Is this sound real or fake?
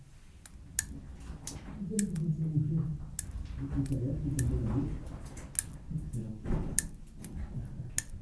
real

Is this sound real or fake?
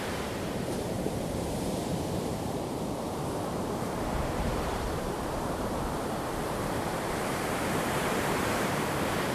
fake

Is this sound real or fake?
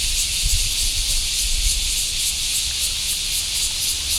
real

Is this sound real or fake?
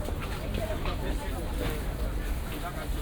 real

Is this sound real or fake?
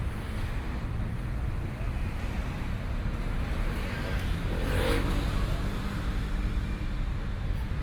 real